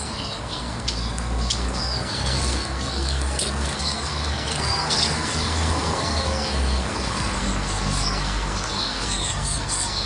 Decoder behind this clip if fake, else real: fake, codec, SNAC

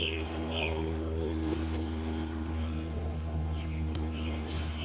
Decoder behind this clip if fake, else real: fake, codec, SNAC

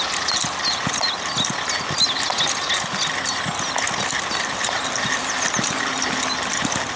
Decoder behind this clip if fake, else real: real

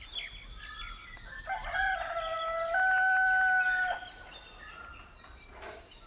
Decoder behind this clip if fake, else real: real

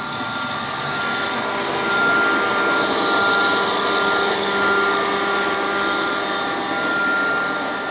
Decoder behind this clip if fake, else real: real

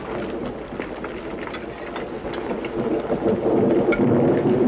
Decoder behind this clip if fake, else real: real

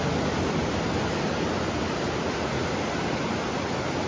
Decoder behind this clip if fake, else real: real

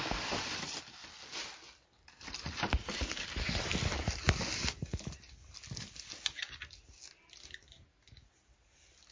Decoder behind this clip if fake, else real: real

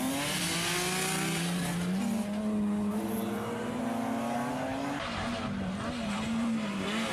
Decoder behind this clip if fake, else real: real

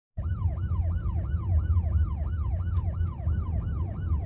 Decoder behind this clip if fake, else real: real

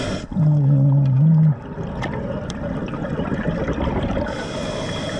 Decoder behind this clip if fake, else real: real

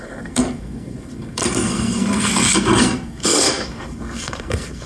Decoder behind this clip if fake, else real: fake, codec, SNAC